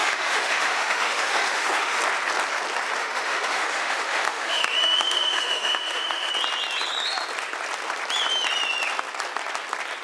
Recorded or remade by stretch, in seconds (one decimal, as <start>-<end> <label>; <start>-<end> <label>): 0.0-2.0 remade; 2.0-3.0 recorded; 3.0-6.3 remade; 6.3-10.0 recorded